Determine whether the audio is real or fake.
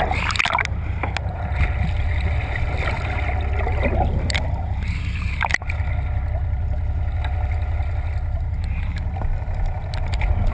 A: real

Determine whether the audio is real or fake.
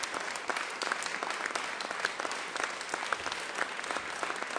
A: real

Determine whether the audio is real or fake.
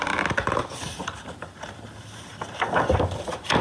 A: fake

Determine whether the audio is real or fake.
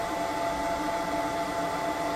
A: real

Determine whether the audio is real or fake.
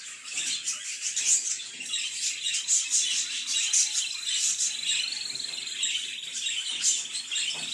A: real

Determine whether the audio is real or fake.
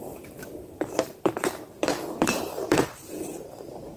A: fake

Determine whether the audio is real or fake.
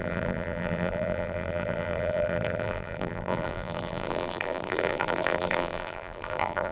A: fake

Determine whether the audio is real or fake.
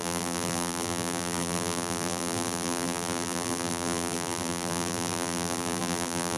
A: fake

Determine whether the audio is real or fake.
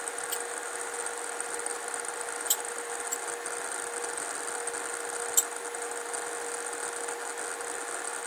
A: real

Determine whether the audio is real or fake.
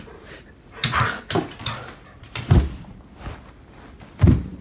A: fake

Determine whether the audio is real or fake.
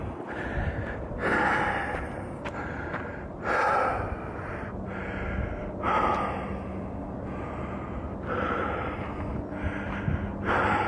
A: real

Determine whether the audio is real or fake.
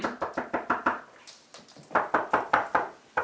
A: fake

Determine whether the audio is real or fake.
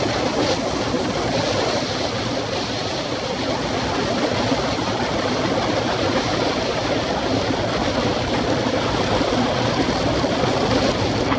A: real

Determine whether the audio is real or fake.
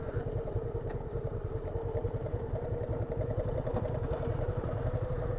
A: fake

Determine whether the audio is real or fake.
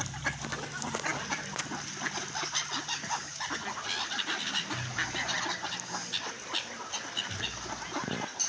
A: real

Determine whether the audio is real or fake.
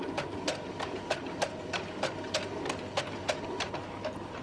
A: real